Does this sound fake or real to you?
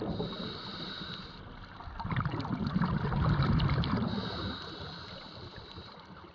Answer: real